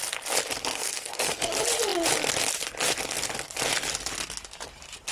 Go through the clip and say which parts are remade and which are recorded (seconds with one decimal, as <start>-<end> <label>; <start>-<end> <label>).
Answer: 0.0-0.7 recorded; 0.7-1.5 remade; 1.5-5.1 recorded